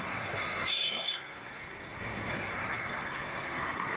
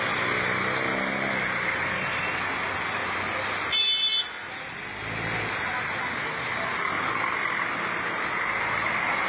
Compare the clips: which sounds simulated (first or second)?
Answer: first